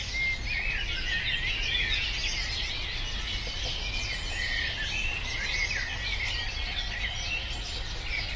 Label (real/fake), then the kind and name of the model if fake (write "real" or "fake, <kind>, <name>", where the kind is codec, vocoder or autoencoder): real